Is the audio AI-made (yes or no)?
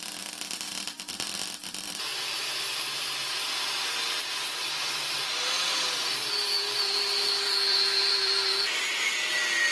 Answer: yes